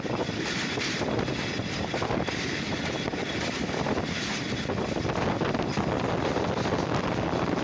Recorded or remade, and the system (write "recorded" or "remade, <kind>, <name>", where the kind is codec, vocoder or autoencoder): recorded